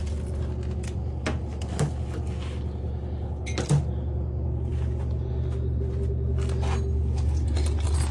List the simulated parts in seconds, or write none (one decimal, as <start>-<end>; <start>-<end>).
none